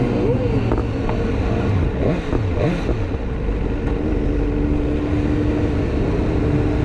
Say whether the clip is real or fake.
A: real